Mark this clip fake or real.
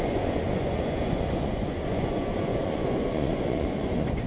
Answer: fake